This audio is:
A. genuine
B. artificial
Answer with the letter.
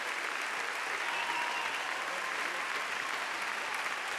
A